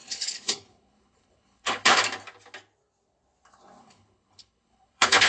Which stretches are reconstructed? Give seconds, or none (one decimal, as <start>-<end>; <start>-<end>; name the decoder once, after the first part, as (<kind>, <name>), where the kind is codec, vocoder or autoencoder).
0.0-2.0 (codec, HILCodec); 3.8-5.3